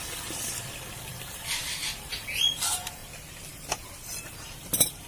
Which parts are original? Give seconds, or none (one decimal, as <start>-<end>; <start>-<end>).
3.0-3.5